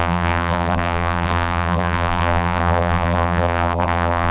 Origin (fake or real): fake